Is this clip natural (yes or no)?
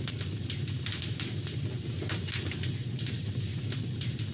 yes